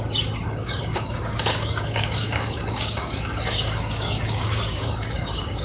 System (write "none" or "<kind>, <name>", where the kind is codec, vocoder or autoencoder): codec, DAC